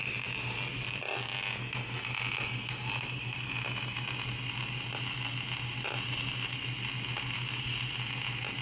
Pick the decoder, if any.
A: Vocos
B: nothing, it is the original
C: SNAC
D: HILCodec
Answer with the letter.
B